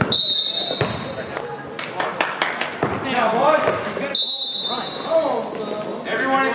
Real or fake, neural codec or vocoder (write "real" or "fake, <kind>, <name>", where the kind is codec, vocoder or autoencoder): real